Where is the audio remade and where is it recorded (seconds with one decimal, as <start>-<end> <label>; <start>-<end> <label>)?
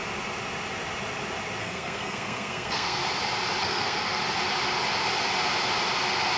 0.0-1.6 recorded; 1.6-3.0 remade; 3.0-3.6 recorded; 3.6-4.2 remade; 4.2-6.4 recorded